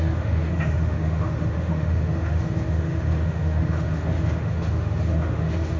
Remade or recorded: remade